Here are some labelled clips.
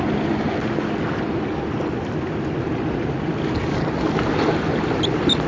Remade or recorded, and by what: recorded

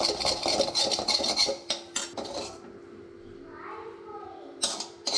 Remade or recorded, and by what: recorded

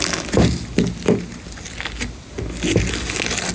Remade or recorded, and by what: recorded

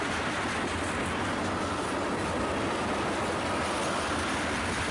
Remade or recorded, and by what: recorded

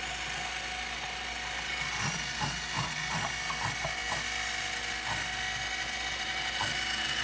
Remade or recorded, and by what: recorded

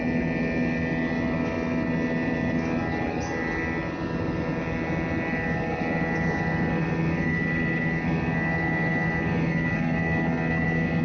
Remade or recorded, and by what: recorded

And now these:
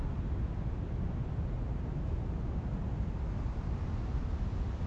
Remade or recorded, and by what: recorded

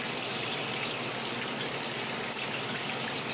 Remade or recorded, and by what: recorded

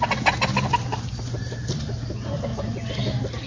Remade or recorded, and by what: recorded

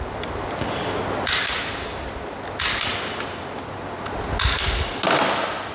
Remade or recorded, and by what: recorded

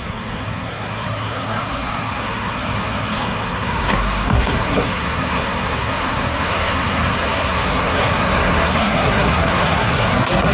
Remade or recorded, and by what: remade, codec, SNAC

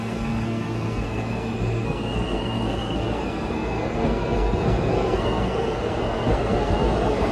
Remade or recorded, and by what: remade, codec, SNAC